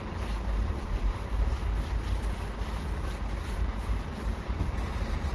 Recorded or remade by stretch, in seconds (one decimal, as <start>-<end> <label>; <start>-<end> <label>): 0.0-1.7 remade; 1.7-3.5 recorded; 3.5-5.3 remade